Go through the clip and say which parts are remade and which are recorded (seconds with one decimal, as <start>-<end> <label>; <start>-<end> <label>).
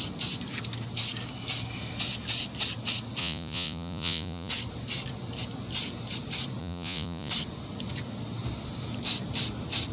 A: 0.0-3.2 recorded; 3.2-4.5 remade; 4.5-6.6 recorded; 6.6-7.3 remade; 7.3-9.9 recorded